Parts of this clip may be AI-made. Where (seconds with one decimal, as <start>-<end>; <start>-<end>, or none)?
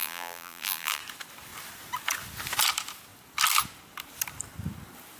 0.0-1.0